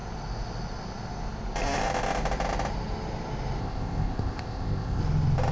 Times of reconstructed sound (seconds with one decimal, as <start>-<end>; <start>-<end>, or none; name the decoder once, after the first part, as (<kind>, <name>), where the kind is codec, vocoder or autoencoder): 3.6-5.0 (codec, ZipCodec)